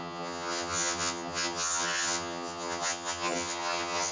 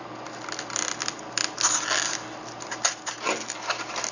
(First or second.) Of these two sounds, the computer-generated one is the first